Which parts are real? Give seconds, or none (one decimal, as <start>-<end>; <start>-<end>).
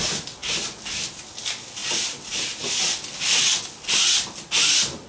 0.0-5.1